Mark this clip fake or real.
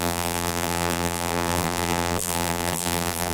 fake